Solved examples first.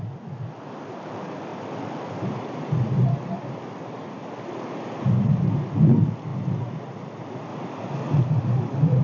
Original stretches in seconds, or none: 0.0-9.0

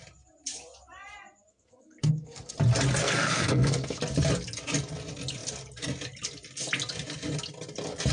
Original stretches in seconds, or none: 0.0-1.5; 2.5-3.0; 4.0-8.1

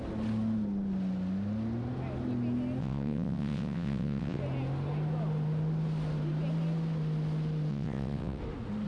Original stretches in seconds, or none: 0.0-2.8; 4.4-7.7; 8.4-8.9

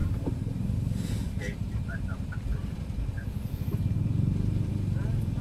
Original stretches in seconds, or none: 1.1-5.4

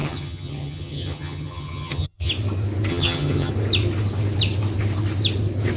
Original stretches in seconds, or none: 2.3-2.9; 3.5-5.8

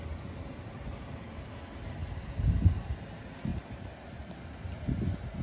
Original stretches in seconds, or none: 0.0-5.4